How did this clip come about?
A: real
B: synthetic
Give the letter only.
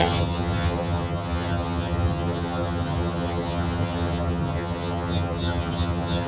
B